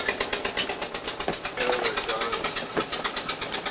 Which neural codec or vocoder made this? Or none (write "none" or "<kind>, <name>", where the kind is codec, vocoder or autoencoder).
none